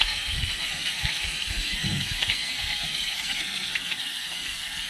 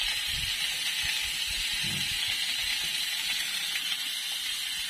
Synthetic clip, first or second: first